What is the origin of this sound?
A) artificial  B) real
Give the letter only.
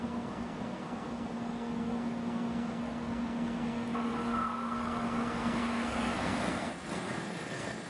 A